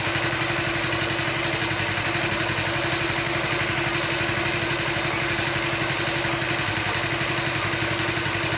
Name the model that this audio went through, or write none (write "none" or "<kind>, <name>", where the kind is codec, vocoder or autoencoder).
none